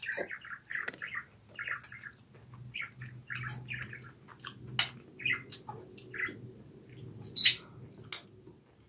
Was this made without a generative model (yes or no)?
yes